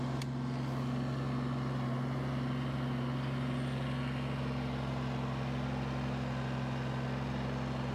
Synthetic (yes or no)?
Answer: no